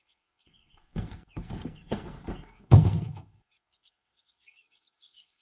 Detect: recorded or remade remade